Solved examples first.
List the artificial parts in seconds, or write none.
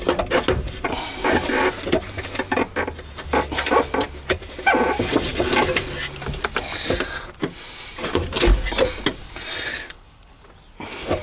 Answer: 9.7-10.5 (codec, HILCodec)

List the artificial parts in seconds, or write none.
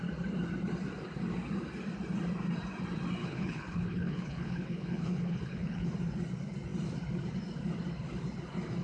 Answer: 3.2-5.9 (codec, HILCodec)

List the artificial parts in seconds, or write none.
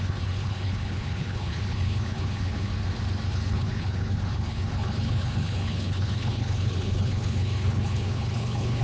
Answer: 0.0-2.7 (codec, HILCodec); 3.3-8.8